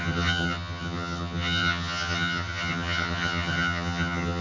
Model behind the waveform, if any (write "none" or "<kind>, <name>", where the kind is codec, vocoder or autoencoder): vocoder, HiFi-GAN